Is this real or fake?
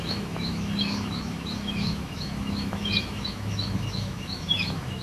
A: fake